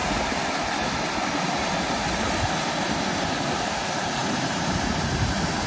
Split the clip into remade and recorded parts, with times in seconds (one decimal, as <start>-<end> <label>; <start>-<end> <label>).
0.0-4.2 recorded; 4.2-5.7 remade